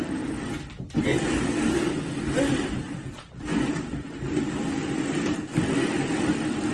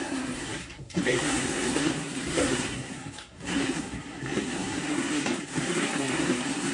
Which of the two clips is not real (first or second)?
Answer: second